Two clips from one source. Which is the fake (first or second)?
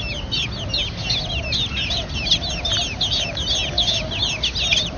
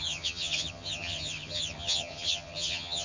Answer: second